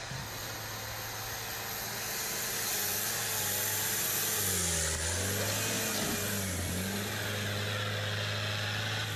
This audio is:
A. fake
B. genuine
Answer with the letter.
B